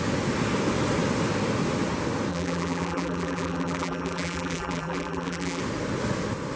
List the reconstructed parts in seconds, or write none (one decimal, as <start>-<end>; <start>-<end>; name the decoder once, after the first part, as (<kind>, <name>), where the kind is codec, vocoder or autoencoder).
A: 2.3-5.6 (vocoder, BigVGAN v2)